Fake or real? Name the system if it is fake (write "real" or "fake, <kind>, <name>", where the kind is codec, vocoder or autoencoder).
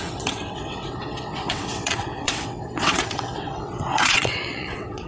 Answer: fake, vocoder, WaveNeXt